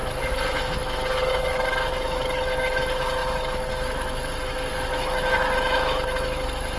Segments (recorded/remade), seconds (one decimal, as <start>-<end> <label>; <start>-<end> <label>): 0.0-6.8 remade